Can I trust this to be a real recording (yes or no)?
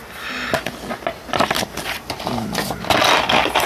yes